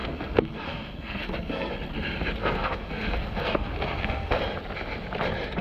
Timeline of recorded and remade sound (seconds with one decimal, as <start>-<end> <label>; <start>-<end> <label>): 0.0-1.7 remade; 1.7-2.4 recorded; 2.4-4.4 remade; 4.4-5.6 recorded